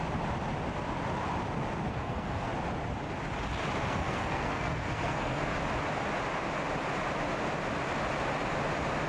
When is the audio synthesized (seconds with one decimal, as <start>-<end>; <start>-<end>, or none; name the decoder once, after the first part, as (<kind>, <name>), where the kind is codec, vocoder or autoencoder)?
1.9-2.5 (codec, SNAC); 3.8-5.5